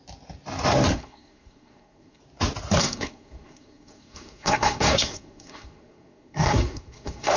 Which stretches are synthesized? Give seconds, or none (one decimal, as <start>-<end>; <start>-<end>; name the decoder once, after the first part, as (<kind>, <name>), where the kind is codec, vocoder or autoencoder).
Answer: 0.9-2.2 (codec, SNAC); 2.8-7.4